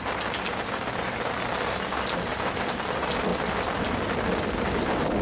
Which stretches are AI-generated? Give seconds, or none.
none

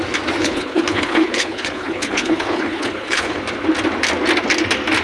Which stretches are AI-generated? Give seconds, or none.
0.4-3.4 (codec, HILCodec)

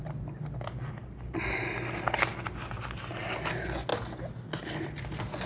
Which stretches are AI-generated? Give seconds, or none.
2.3-3.1 (vocoder, BigVGAN v2)

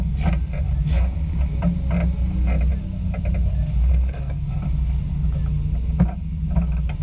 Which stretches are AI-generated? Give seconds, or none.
3.9-4.5 (codec, SNAC)